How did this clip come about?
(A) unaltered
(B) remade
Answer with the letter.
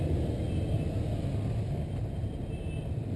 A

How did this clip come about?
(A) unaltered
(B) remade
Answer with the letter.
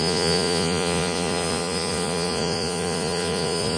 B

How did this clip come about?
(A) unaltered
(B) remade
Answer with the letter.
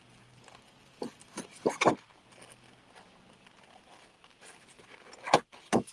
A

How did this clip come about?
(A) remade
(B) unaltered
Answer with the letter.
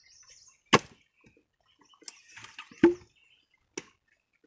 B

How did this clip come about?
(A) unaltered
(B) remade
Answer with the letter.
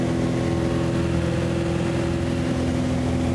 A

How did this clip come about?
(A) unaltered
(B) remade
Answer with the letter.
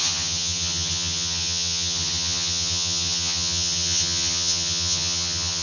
B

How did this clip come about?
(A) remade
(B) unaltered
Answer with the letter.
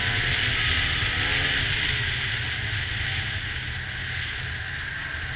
B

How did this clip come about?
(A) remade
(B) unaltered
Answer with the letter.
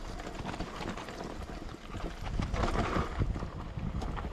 B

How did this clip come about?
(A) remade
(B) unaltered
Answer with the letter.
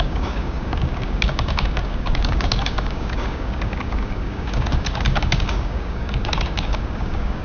A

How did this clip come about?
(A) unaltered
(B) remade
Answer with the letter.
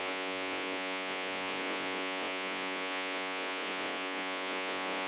B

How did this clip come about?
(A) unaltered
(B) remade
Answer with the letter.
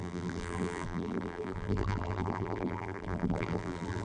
B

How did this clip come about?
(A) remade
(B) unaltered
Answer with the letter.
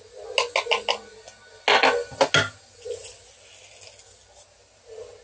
B